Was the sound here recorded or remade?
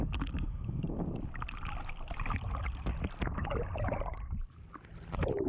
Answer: recorded